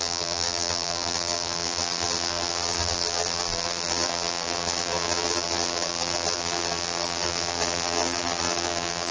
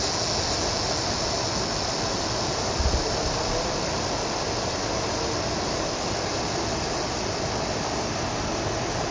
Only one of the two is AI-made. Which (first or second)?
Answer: first